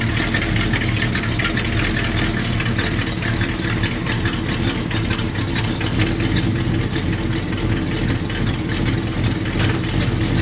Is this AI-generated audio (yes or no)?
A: no